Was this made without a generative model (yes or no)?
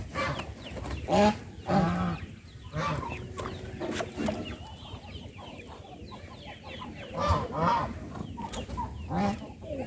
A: yes